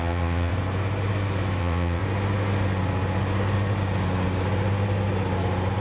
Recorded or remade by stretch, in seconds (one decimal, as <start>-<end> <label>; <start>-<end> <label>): 0.0-0.5 remade; 0.5-1.6 recorded; 1.6-2.0 remade; 2.0-5.8 recorded